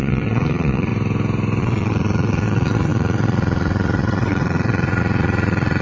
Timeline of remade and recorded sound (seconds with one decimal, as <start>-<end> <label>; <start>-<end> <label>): 0.0-0.9 remade; 0.9-1.6 recorded; 1.6-5.8 remade